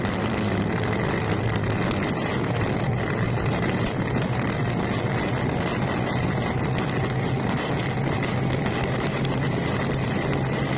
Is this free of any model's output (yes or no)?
no